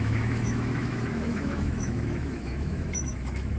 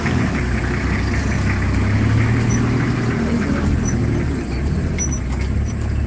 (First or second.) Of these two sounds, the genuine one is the second